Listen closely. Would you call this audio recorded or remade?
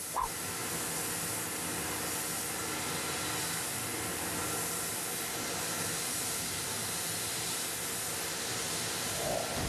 recorded